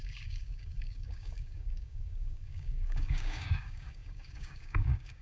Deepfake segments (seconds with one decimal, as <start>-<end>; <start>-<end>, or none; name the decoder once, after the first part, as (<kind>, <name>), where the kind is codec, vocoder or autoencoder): 0.0-5.2 (codec, DAC)